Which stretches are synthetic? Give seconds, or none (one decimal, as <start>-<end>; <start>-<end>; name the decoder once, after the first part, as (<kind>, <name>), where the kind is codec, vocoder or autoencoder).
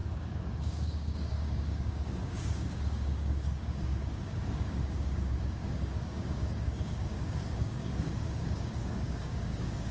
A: 0.0-9.9 (codec, DAC)